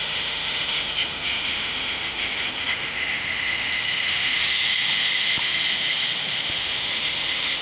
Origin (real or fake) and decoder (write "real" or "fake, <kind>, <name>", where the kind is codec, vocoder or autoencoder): fake, autoencoder, DAC-VAE